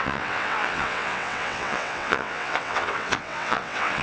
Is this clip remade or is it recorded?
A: remade